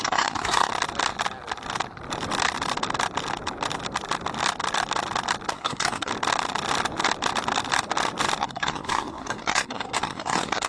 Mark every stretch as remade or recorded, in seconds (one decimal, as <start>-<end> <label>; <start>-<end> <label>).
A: 0.0-0.7 remade; 0.7-5.5 recorded; 5.5-6.1 remade; 6.1-8.4 recorded; 8.4-10.7 remade